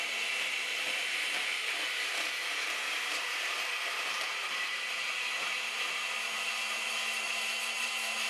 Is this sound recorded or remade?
remade